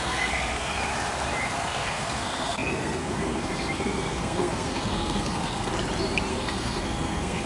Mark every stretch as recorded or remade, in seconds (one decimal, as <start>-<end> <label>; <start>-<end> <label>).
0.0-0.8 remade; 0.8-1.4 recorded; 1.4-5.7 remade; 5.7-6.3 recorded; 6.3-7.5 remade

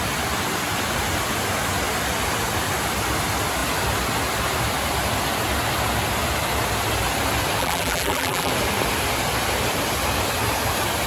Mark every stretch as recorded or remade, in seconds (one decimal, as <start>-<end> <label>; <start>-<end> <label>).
0.0-7.6 recorded; 7.6-8.5 remade; 8.5-11.1 recorded

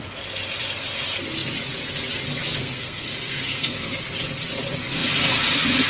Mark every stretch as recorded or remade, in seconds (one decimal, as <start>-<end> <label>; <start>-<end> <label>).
0.0-2.6 recorded; 2.6-4.0 remade; 4.0-5.9 recorded

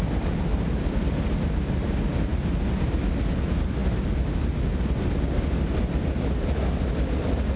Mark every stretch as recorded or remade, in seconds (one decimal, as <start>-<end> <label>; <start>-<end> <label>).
0.0-7.6 recorded

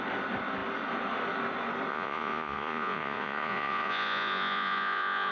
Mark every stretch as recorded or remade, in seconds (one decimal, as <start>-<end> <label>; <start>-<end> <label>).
0.0-1.9 recorded; 1.9-5.3 remade

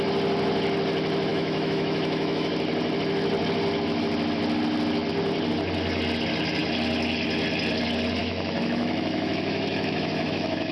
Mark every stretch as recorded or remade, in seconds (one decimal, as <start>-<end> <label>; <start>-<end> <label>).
0.0-1.3 recorded; 1.3-2.5 remade; 2.5-8.2 recorded; 8.2-10.7 remade

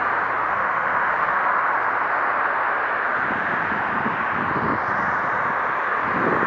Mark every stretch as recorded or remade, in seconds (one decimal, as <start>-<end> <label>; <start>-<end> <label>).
0.0-0.5 recorded; 0.5-1.6 remade; 1.6-6.5 recorded

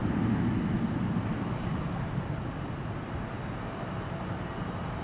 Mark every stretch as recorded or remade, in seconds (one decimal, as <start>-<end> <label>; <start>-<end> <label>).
0.0-5.0 recorded